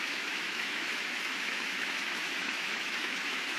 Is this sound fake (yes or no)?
yes